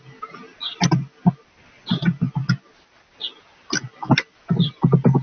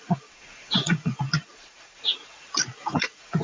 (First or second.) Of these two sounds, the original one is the first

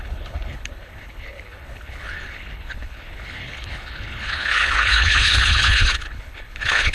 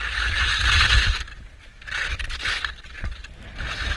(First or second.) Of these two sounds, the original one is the second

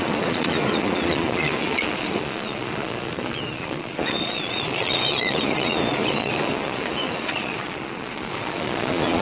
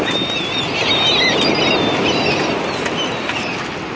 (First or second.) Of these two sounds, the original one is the second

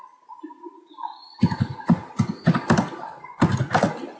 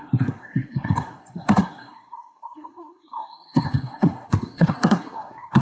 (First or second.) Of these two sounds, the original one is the first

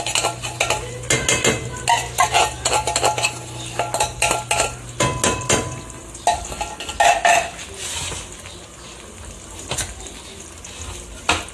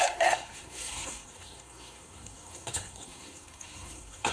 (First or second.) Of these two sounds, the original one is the first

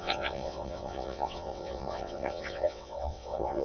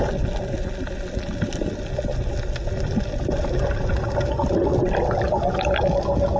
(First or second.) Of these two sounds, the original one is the second